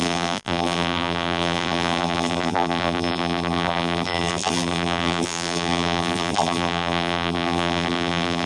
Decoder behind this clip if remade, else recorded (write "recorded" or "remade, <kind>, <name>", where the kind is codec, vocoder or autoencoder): remade, vocoder, BigVGAN v2